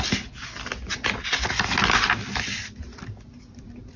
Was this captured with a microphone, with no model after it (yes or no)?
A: yes